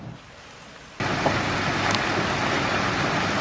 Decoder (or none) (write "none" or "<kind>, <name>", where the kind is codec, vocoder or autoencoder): none